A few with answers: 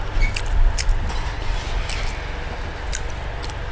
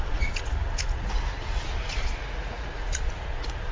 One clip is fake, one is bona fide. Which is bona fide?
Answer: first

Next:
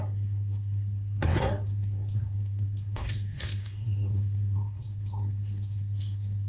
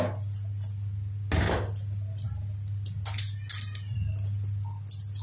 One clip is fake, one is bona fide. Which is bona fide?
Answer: second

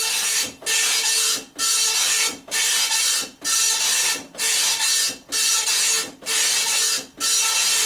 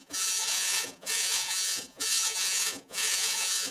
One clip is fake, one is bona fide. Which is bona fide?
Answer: first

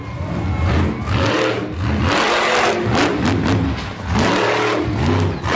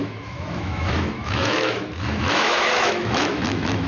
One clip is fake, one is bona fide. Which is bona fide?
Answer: first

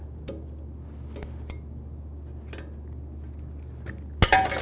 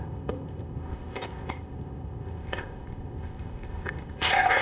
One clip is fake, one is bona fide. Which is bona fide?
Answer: first